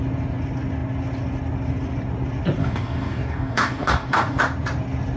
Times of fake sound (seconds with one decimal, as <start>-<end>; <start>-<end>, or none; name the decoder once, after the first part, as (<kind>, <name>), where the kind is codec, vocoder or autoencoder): 2.6-4.4 (codec, DAC)